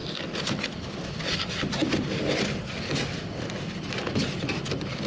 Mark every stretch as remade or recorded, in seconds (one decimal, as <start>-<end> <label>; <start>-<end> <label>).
0.0-5.1 recorded